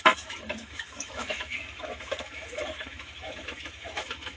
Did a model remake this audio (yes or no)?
yes